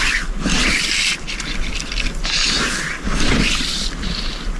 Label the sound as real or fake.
real